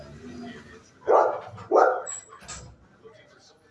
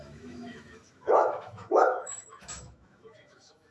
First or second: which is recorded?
first